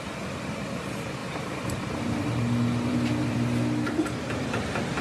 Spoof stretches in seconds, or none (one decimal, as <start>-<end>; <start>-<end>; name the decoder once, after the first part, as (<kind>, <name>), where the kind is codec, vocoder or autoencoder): 1.2-4.0 (vocoder, BigVGAN v2)